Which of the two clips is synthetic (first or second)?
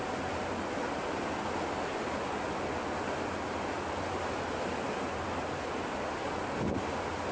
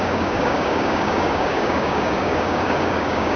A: second